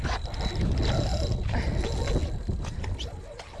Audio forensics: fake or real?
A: real